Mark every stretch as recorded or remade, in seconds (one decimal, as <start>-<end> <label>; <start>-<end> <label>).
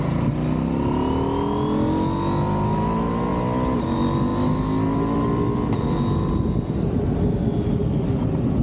0.0-8.6 recorded